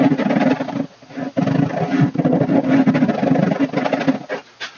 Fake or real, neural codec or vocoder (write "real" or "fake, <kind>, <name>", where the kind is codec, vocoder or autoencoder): real